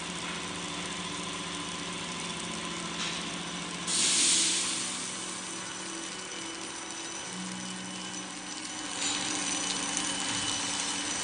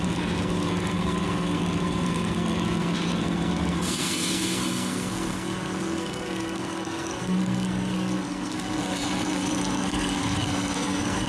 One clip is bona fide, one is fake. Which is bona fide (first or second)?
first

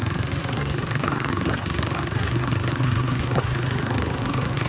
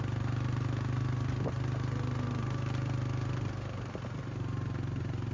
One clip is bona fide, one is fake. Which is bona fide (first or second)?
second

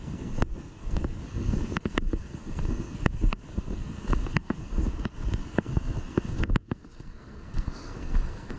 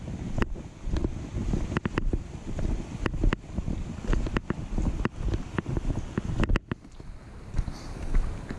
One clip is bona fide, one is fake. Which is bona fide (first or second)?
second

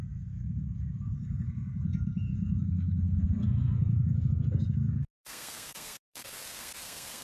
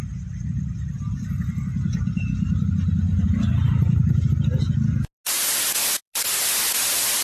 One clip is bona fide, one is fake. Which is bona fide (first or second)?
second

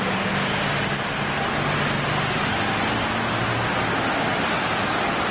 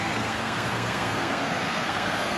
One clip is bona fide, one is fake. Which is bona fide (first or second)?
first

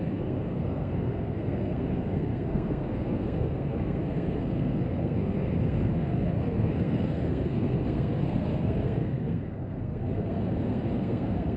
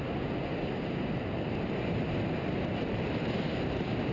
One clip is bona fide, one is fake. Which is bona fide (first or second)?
second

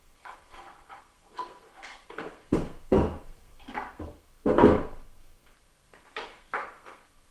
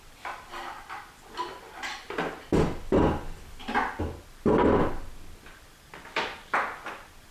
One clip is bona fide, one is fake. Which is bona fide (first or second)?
second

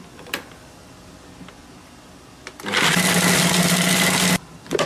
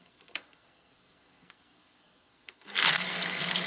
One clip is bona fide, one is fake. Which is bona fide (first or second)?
first